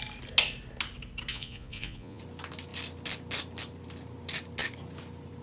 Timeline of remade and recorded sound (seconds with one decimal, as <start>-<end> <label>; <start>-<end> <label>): 0.0-1.3 recorded; 1.3-2.2 remade; 2.2-5.4 recorded